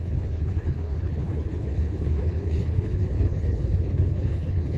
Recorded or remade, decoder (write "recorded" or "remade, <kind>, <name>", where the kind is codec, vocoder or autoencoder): remade, codec, HILCodec